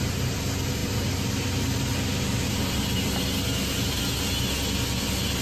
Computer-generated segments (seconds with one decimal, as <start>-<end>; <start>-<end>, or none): none

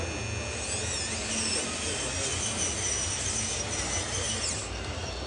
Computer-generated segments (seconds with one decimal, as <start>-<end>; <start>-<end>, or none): 4.6-5.3